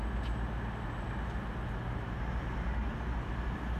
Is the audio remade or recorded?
recorded